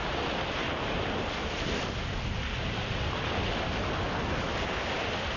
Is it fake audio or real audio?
real